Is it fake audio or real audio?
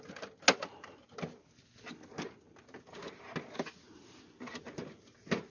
real